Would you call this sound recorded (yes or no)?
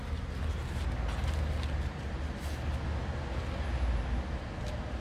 yes